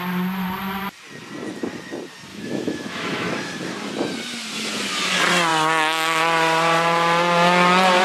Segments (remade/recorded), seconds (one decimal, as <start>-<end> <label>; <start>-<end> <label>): 0.0-2.3 recorded; 2.3-3.3 remade; 3.3-8.0 recorded